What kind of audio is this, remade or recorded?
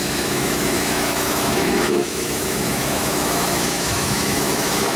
remade